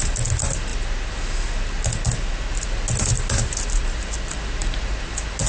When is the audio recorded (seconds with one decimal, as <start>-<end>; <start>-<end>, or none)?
0.0-5.5